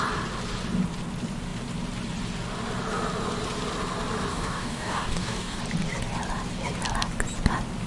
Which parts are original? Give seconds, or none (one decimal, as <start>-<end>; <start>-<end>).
0.0-4.3; 5.6-7.9